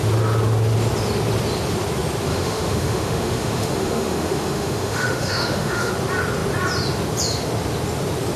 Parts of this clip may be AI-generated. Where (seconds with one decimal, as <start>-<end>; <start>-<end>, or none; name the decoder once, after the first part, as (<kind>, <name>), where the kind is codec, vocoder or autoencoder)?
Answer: 2.3-5.9 (autoencoder, DAC-VAE)